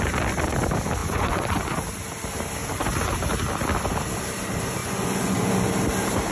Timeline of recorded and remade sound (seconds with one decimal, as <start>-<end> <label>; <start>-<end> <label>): 0.0-1.0 recorded; 1.0-1.6 remade; 1.6-4.8 recorded; 4.8-5.7 remade; 5.7-6.3 recorded